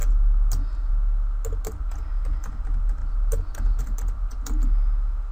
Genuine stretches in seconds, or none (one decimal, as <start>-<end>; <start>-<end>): 0.0-5.3